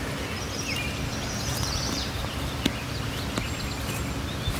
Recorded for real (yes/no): yes